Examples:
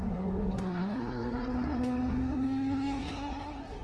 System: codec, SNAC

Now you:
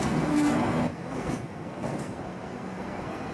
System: codec, SNAC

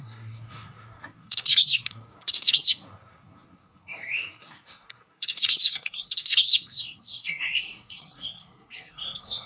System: codec, SNAC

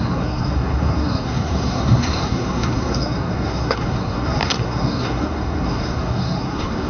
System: codec, SNAC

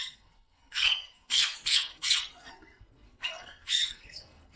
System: codec, SNAC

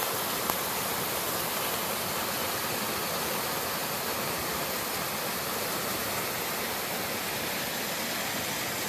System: none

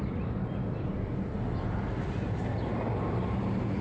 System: none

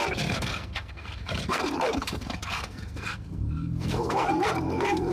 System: codec, SNAC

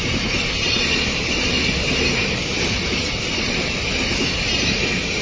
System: none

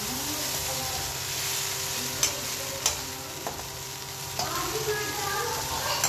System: none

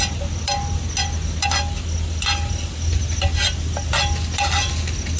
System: none